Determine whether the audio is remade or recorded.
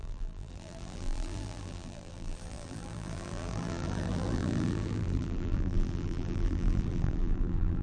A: remade